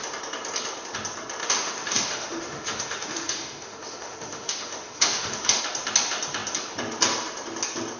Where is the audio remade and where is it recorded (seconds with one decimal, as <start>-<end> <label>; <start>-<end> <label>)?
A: 0.0-1.4 recorded; 1.4-5.6 remade; 5.6-8.0 recorded